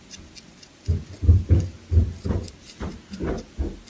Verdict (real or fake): real